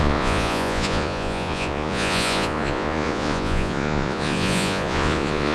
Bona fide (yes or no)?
no